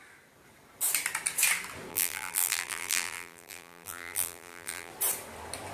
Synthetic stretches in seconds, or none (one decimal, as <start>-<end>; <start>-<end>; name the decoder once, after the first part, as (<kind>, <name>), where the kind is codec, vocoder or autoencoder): 1.9-4.9 (vocoder, BigVGAN v2)